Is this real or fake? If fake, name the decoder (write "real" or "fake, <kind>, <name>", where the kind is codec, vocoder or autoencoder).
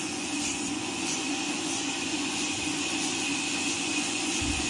fake, vocoder, Vocos